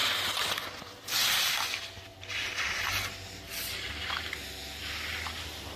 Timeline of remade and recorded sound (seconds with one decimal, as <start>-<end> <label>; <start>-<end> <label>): 0.0-5.8 recorded